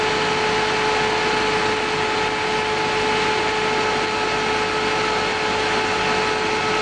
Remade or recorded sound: recorded